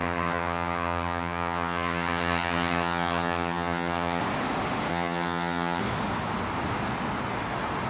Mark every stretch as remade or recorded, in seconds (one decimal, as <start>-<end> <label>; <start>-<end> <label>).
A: 0.0-4.2 remade; 4.2-4.9 recorded; 4.9-5.8 remade; 5.8-7.9 recorded